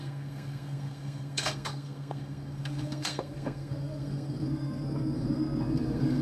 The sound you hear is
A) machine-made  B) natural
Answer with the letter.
A